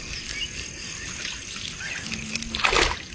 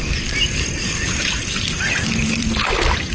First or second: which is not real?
second